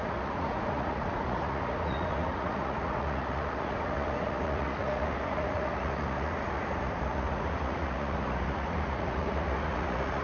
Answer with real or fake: fake